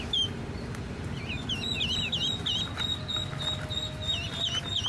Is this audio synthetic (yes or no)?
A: no